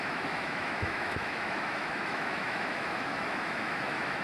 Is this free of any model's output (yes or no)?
no